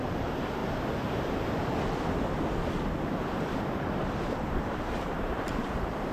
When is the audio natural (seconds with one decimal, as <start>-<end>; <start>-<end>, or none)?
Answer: 0.6-4.3